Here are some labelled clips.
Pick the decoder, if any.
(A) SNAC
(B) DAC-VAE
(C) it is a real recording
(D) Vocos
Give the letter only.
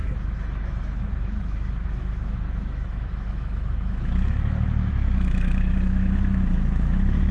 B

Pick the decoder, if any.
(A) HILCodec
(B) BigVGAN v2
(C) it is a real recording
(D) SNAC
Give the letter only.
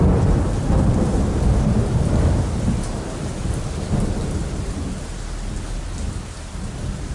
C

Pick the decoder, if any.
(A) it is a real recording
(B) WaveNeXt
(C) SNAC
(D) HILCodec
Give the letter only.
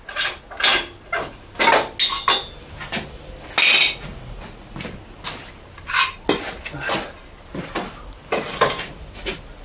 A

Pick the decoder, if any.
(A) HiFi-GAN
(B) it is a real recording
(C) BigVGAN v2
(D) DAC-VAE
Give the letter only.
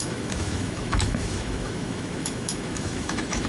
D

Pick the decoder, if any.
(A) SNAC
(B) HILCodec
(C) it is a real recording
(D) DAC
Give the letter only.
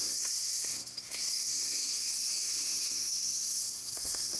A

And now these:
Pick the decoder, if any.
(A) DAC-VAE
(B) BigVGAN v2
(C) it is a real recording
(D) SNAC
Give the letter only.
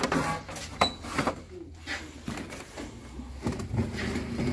C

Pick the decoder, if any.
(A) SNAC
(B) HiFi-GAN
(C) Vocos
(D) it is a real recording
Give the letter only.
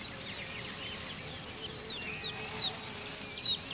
D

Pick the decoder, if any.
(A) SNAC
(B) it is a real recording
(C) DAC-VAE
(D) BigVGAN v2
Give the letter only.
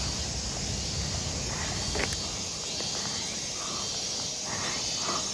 B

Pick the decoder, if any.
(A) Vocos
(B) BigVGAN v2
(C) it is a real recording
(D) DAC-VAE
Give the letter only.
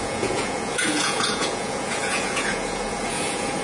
A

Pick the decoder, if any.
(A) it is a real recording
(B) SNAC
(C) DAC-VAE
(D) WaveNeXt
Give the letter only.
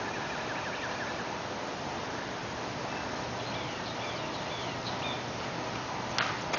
A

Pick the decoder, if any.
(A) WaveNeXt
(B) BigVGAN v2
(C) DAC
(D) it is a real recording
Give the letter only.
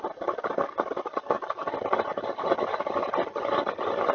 D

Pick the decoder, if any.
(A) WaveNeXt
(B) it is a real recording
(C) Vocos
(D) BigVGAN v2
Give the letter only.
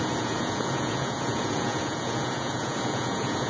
C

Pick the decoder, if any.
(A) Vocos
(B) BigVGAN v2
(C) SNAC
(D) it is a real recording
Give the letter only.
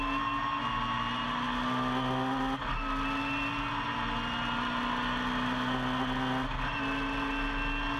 D